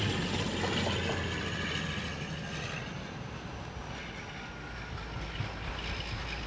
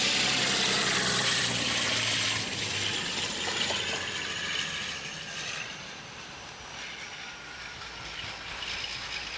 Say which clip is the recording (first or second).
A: first